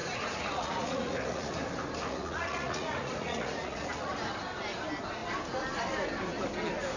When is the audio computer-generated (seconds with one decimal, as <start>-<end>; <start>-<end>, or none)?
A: 0.0-1.5; 2.0-4.1